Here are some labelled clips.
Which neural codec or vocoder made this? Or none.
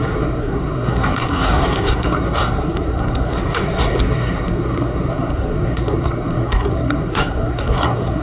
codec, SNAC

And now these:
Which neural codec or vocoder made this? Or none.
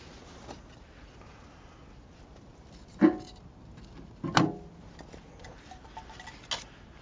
none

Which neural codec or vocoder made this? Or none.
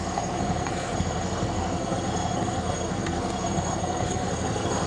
codec, SNAC